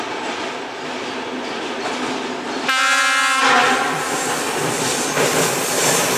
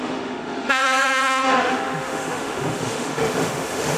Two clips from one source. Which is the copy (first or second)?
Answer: second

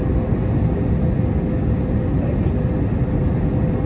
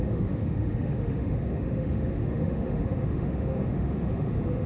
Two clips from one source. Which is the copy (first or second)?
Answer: second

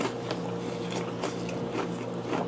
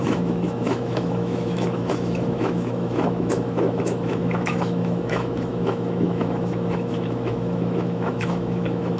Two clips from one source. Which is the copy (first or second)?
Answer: second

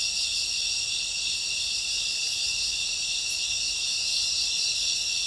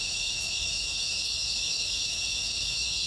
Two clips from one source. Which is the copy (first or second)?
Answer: second